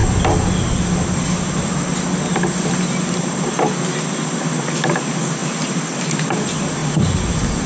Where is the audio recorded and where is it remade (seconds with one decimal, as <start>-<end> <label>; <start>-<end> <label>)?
0.0-7.7 recorded